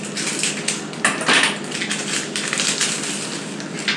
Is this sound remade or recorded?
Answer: recorded